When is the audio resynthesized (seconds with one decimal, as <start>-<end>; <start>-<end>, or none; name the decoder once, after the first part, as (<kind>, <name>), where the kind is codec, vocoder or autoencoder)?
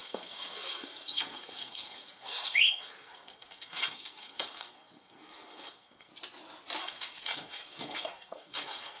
0.0-6.1 (codec, SNAC); 6.8-9.0